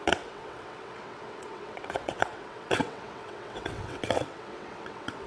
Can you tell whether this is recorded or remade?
remade